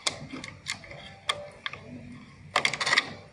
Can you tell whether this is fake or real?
real